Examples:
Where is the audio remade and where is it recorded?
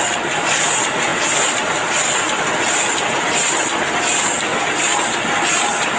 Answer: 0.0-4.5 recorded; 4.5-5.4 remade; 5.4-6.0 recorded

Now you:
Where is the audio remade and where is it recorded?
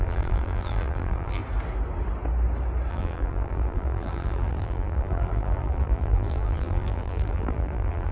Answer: 0.0-1.4 remade; 1.4-2.9 recorded; 2.9-8.1 remade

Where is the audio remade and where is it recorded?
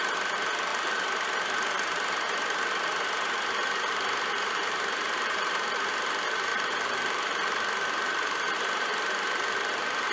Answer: 0.0-0.7 recorded; 0.7-5.9 remade; 5.9-6.5 recorded; 6.5-9.7 remade; 9.7-10.1 recorded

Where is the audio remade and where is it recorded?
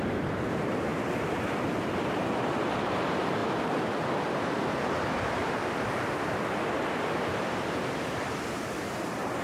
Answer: 0.0-5.6 remade; 5.6-7.3 recorded; 7.3-9.4 remade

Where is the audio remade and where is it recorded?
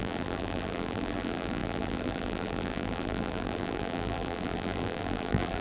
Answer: 0.0-5.6 remade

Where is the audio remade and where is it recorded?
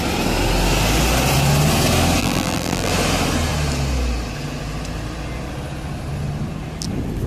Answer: 0.0-2.2 recorded; 2.2-2.9 remade; 2.9-7.3 recorded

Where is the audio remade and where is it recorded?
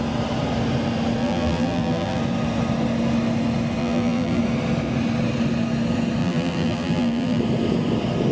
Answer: 0.0-1.2 recorded; 1.2-2.2 remade; 2.2-3.8 recorded; 3.8-4.4 remade; 4.4-6.2 recorded; 6.2-7.4 remade; 7.4-8.3 recorded